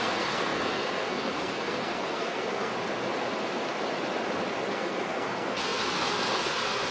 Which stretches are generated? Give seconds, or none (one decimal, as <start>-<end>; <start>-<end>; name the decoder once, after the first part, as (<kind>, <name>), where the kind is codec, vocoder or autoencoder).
0.0-2.7 (codec, SNAC); 4.7-6.9